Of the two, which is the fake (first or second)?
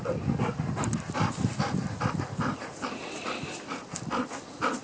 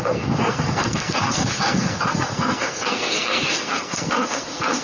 second